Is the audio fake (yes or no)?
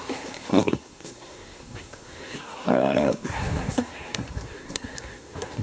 yes